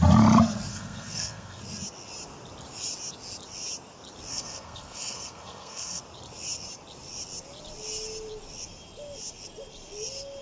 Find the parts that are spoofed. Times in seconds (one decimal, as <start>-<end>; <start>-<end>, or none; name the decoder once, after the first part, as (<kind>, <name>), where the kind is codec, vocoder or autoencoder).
0.7-1.6 (codec, SNAC); 4.3-6.0